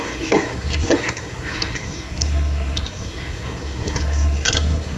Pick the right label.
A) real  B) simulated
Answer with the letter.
B